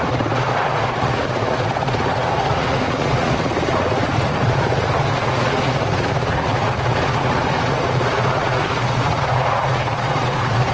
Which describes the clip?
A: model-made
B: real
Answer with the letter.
A